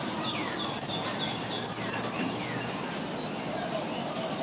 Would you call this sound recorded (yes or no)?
yes